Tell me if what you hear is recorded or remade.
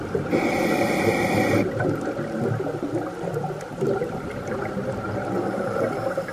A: remade